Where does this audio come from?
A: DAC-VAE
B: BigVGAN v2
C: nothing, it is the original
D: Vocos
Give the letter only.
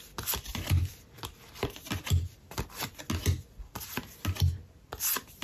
C